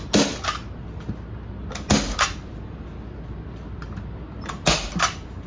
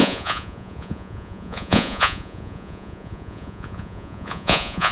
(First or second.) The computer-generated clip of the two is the second